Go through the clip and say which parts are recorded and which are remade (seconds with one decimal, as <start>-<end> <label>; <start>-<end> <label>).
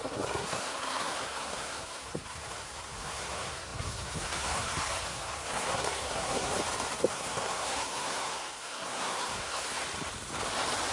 0.0-6.5 remade; 6.5-7.1 recorded; 7.1-9.8 remade; 9.8-10.9 recorded